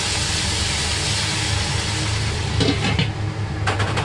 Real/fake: real